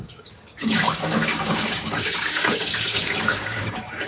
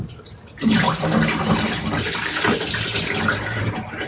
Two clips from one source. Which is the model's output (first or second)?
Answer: first